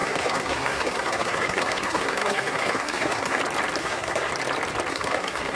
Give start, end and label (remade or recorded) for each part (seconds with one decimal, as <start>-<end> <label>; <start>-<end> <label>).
0.0-3.4 remade; 3.4-3.8 recorded; 3.8-4.3 remade; 4.3-4.9 recorded; 4.9-5.6 remade